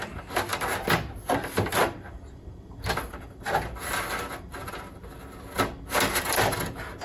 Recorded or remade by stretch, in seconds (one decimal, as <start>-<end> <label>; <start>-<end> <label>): 0.0-0.5 recorded; 0.5-4.7 remade; 4.7-7.0 recorded